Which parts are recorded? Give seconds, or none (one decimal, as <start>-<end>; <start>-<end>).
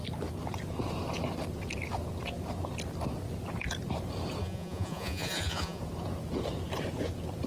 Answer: 0.0-4.4; 5.8-7.5